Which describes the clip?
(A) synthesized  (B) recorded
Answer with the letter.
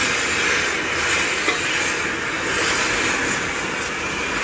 B